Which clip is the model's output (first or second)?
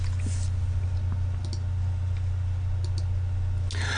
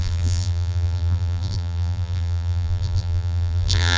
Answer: second